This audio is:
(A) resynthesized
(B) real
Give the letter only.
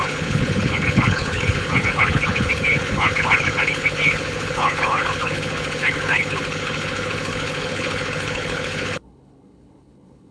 A